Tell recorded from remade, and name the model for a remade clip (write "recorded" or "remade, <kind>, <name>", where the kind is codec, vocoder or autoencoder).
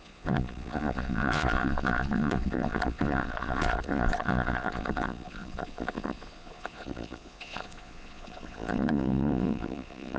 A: remade, vocoder, Vocos